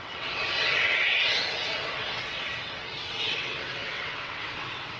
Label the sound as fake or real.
fake